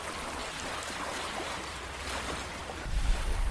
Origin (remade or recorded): recorded